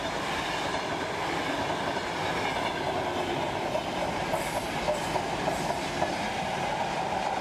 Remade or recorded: recorded